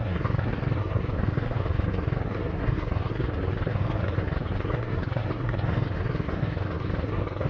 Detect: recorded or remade remade